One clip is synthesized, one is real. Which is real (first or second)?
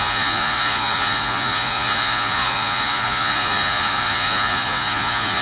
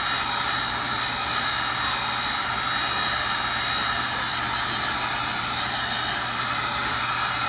second